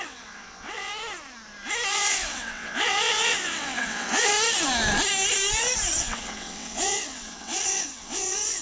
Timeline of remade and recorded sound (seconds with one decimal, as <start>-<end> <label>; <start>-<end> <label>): 0.0-0.9 remade; 0.9-1.9 recorded; 1.9-4.3 remade; 4.3-6.0 recorded; 6.0-8.6 remade